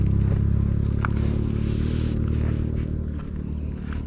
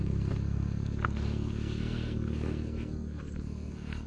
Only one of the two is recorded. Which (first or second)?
first